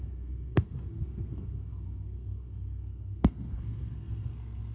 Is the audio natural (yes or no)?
no